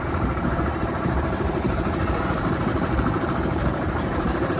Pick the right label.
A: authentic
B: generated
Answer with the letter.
B